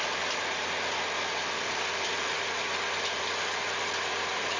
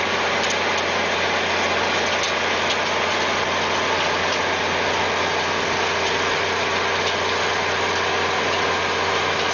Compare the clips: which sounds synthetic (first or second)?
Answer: first